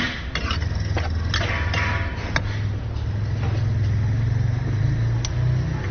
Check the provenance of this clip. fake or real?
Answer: real